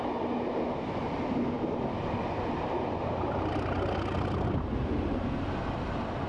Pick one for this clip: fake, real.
real